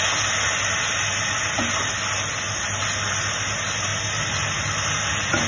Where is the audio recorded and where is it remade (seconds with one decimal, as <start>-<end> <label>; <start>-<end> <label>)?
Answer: 0.0-5.5 recorded